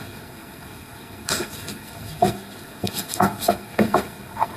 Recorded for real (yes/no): no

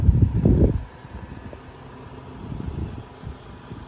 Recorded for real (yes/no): yes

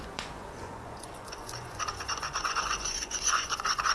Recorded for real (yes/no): no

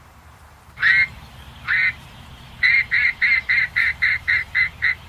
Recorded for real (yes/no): no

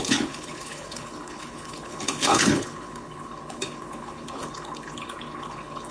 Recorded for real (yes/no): no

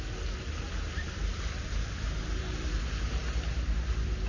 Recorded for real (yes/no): yes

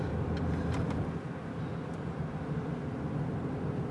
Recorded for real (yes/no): yes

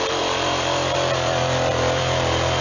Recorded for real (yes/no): no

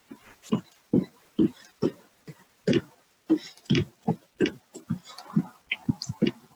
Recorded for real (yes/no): no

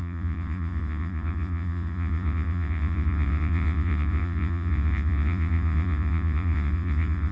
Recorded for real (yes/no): no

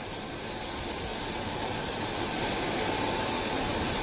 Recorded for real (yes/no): yes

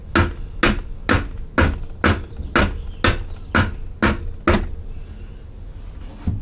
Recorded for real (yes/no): yes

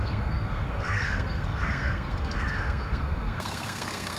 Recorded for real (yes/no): no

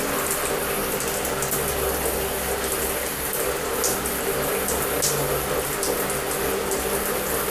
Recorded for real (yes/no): yes